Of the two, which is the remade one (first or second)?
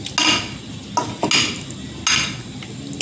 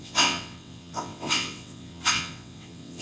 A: second